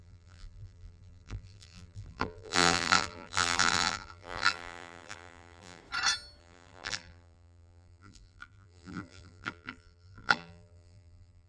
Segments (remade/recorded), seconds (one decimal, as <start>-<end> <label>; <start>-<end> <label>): 0.0-5.8 remade; 5.8-6.4 recorded; 6.4-11.5 remade